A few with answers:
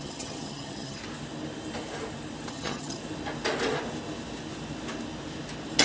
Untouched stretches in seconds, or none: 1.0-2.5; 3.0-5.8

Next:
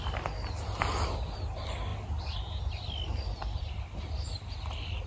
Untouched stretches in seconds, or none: 0.0-5.1

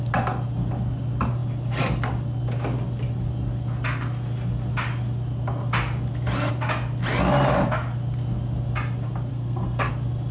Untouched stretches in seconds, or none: 0.0-9.3; 9.9-10.3

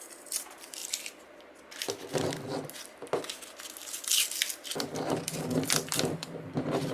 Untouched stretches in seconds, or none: 0.8-4.9

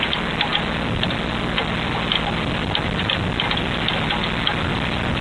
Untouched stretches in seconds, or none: 0.0-5.2

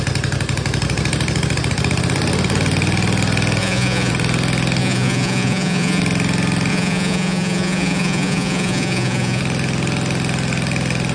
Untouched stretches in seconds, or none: 0.0-3.6; 4.1-4.8; 6.0-6.7; 9.4-11.1